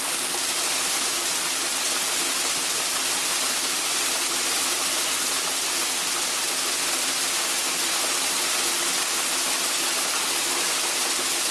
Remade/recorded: recorded